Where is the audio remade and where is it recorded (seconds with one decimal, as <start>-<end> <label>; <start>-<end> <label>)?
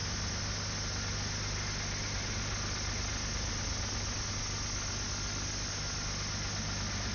0.0-7.1 recorded